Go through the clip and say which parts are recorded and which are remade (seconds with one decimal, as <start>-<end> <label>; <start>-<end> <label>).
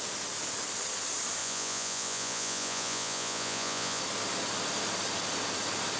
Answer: 0.0-1.4 recorded; 1.4-4.0 remade; 4.0-6.0 recorded